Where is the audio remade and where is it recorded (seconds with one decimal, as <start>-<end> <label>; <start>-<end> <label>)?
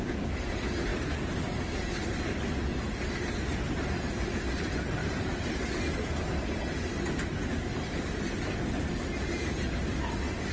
0.0-5.0 recorded; 5.0-5.8 remade; 5.8-10.5 recorded